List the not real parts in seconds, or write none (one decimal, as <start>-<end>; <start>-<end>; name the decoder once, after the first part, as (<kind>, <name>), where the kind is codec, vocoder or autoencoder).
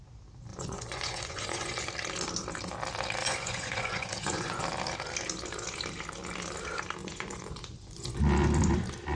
0.5-1.8 (vocoder, Vocos); 3.2-4.6; 7.0-8.2